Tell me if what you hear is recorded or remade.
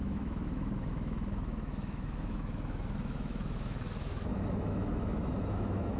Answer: remade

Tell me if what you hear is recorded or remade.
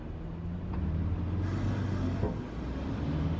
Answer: recorded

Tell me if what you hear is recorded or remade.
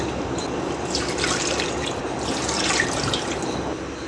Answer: recorded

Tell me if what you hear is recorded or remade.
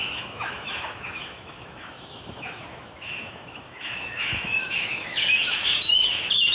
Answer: remade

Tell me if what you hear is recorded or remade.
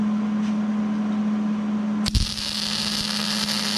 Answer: recorded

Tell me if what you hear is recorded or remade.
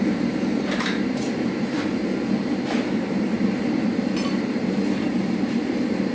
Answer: remade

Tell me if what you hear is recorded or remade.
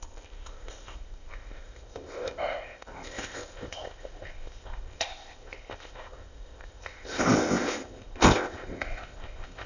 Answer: remade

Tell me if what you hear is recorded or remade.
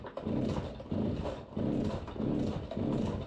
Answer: recorded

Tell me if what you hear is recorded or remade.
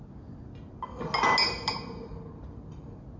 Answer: recorded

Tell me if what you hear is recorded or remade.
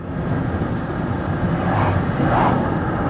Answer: recorded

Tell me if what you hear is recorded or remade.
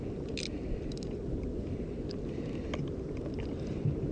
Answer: recorded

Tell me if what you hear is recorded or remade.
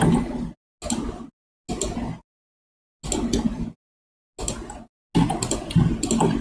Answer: recorded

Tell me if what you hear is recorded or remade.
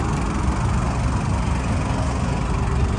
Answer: recorded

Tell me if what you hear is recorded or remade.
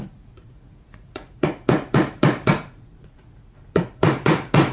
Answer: remade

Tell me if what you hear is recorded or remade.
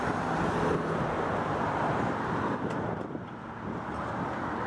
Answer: recorded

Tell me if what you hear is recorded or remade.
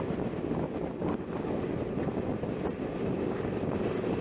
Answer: recorded